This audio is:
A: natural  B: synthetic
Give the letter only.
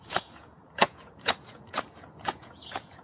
B